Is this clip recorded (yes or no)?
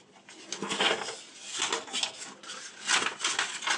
yes